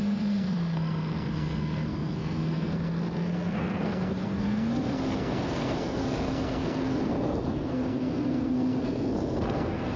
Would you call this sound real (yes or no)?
no